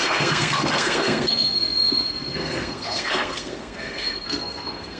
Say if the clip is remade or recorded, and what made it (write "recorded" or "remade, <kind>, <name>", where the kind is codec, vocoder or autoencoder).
remade, codec, SNAC